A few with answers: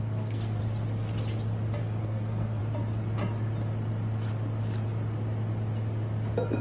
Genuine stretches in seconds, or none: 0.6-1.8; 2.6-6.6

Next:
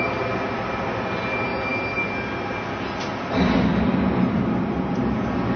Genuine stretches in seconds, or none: 0.0-5.6

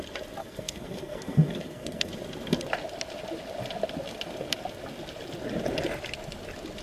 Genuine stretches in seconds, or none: 0.0-0.4; 2.1-6.8

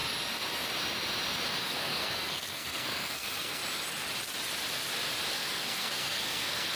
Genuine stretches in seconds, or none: 0.0-1.6; 3.6-5.3

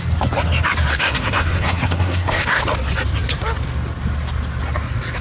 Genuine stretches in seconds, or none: 0.0-0.9; 2.6-5.2

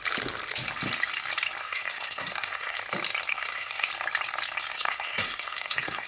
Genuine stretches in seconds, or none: 0.0-1.6; 2.8-3.3; 3.9-4.7

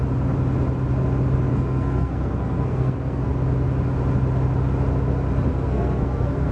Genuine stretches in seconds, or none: 0.0-1.5; 3.3-5.5

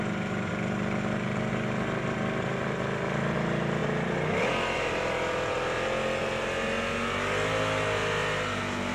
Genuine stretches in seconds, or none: 0.0-8.9